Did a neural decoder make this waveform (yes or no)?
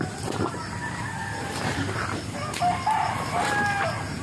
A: no